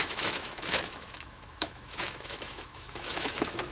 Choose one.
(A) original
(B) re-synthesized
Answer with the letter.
B